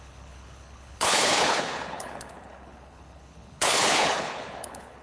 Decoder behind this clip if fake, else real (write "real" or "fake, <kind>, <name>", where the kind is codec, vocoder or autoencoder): fake, codec, HILCodec